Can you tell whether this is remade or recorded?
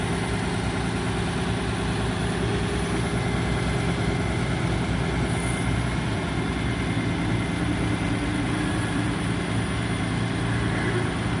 recorded